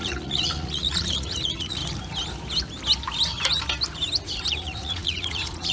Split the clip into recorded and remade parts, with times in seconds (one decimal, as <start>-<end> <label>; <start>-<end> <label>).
0.0-1.8 remade; 1.8-4.5 recorded; 4.5-5.7 remade